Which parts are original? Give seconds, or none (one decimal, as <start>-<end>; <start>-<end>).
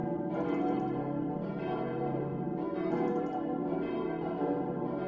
none